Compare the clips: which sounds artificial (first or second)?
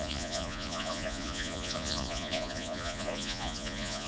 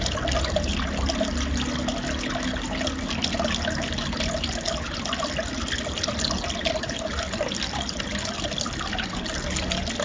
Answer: first